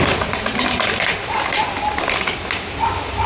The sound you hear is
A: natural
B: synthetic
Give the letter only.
A